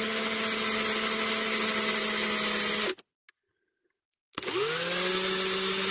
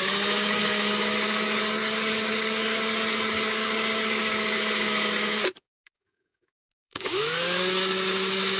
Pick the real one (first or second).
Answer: first